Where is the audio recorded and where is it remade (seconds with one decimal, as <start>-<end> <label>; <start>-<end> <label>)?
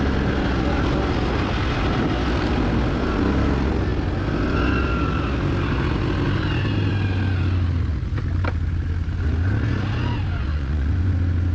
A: 0.0-10.5 recorded; 10.5-11.1 remade; 11.1-11.5 recorded